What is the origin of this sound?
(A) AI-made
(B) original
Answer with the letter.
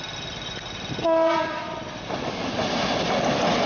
B